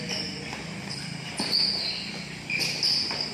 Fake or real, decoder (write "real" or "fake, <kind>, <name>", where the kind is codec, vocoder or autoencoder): real